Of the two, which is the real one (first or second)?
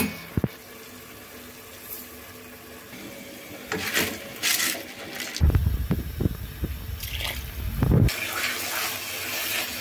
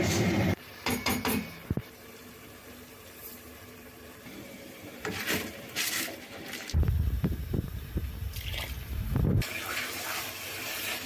first